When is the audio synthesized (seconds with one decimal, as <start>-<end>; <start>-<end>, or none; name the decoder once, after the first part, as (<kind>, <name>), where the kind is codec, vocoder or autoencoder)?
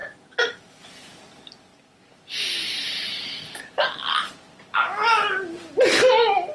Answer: 0.0-0.9 (autoencoder, DAC-VAE)